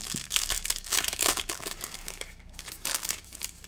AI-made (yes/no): yes